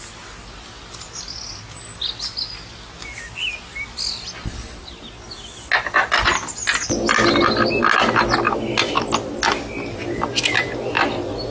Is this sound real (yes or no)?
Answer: yes